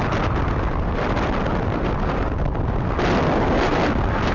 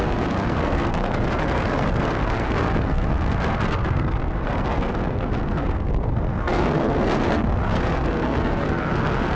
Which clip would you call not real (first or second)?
second